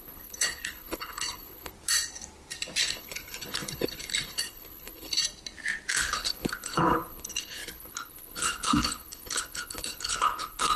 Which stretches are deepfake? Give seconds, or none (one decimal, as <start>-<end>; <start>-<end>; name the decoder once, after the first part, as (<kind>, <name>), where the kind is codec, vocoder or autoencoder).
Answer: 0.0-1.7 (codec, HILCodec); 2.8-5.2; 5.9-10.8